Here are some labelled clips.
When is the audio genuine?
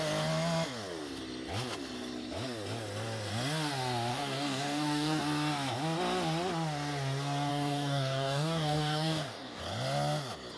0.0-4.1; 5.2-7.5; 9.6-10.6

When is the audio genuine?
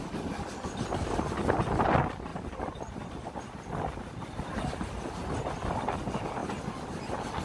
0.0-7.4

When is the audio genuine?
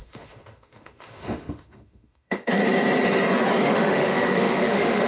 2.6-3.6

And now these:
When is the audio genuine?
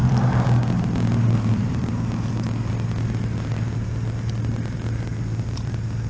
0.0-6.1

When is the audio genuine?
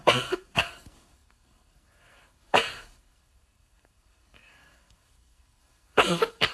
none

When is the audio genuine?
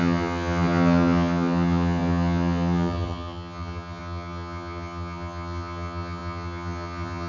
none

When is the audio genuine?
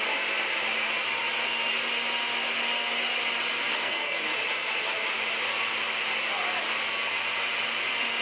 0.0-3.7; 4.2-8.2